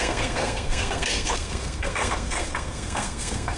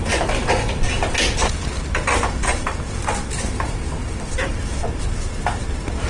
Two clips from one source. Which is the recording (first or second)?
second